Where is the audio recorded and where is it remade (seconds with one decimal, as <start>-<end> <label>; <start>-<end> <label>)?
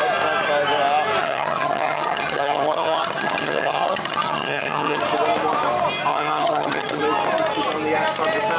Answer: 0.0-1.2 recorded; 1.2-5.0 remade; 5.0-6.1 recorded; 6.1-7.0 remade; 7.0-8.6 recorded